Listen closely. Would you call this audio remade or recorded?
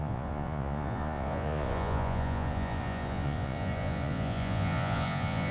remade